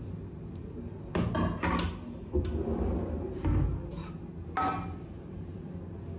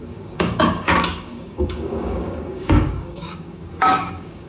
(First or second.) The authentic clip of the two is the first